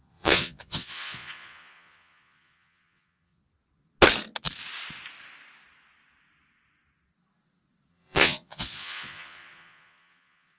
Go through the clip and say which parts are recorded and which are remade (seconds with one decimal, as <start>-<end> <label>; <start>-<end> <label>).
0.0-3.4 remade; 3.4-7.9 recorded; 7.9-10.6 remade